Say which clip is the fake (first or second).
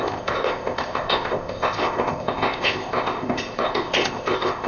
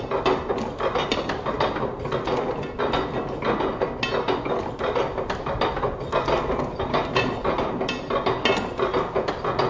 first